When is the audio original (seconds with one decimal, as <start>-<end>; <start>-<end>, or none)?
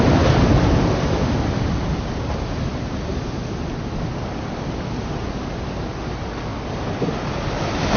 0.0-8.0